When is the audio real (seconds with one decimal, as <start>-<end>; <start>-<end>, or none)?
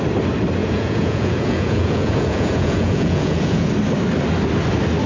0.0-0.6; 3.7-5.1